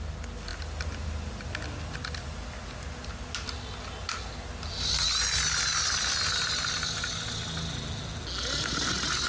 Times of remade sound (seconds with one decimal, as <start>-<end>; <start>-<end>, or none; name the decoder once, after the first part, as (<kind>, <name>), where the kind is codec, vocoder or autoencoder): none